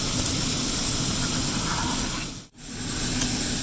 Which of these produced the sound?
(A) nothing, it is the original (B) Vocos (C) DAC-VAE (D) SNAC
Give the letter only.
A